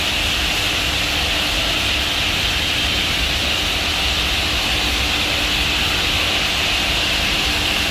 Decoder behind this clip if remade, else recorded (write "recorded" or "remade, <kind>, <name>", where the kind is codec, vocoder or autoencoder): recorded